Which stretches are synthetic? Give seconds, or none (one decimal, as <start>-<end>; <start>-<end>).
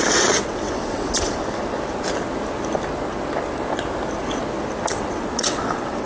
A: 0.0-1.4; 4.9-6.1